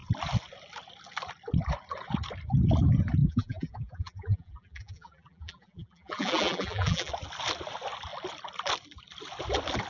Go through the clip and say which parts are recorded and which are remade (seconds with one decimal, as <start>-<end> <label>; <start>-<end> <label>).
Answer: 0.0-3.2 recorded; 3.2-7.1 remade; 7.1-9.9 recorded